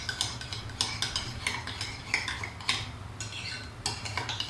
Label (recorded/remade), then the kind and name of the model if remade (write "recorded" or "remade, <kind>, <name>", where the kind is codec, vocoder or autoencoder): recorded